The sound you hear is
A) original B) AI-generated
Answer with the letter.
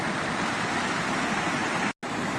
A